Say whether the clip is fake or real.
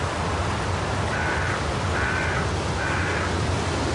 real